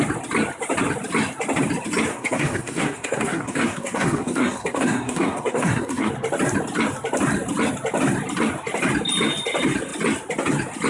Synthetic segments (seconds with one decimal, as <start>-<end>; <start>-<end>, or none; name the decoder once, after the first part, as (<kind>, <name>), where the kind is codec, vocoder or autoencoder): 2.1-6.1 (codec, SNAC)